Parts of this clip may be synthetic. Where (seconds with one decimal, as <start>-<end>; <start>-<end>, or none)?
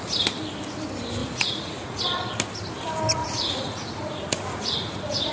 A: 1.2-2.0; 3.2-5.3